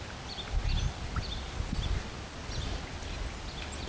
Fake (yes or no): no